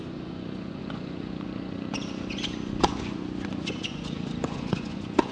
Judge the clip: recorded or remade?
remade